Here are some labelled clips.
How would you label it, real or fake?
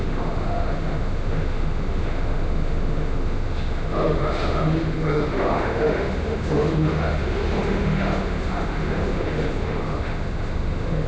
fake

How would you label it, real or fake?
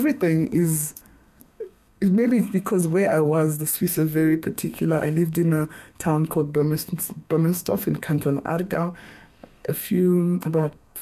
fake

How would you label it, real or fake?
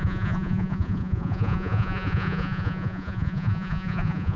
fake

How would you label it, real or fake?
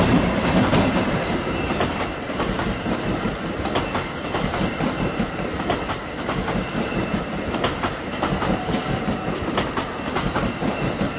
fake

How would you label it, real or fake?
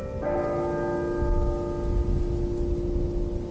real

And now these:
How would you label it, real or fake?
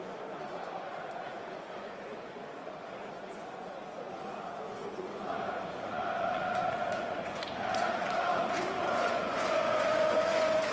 fake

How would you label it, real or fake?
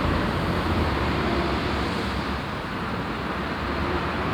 fake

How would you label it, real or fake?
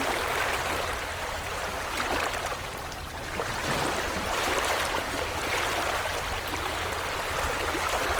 real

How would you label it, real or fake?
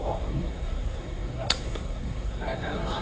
fake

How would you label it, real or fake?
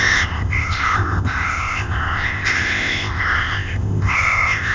fake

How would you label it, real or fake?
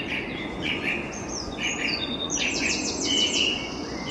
fake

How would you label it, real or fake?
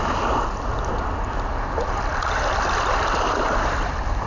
real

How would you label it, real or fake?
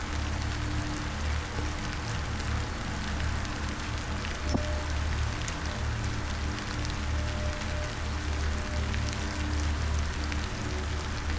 real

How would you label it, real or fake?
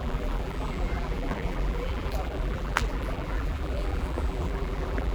fake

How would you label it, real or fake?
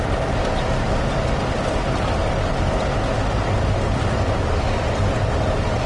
real